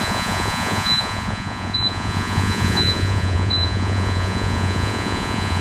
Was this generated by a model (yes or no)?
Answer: yes